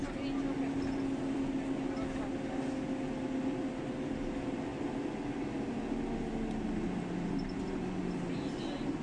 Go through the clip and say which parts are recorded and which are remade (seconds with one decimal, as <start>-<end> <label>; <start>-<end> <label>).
0.0-9.0 recorded